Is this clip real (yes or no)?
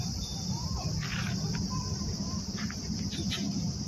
no